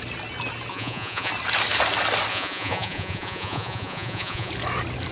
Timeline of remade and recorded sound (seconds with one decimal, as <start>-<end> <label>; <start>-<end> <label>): 0.0-0.7 recorded; 0.7-1.3 remade; 1.3-2.3 recorded; 2.3-4.5 remade; 4.5-5.1 recorded